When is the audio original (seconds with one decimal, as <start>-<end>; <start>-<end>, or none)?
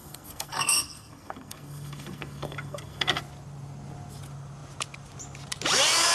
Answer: 3.2-6.1